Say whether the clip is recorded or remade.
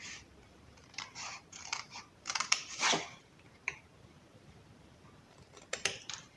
remade